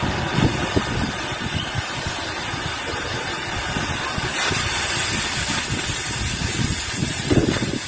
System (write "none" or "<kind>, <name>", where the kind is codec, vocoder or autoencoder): none